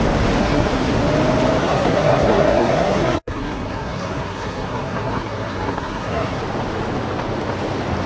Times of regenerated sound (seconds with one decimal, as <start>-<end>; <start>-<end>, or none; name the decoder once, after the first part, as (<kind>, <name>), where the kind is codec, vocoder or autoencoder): 0.4-0.9 (codec, SNAC); 1.6-6.4